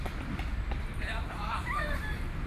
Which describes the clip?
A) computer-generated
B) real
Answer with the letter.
A